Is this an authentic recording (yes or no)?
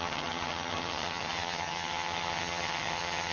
no